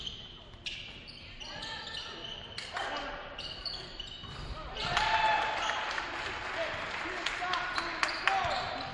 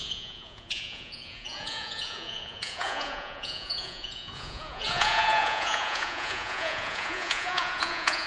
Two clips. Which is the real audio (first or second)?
first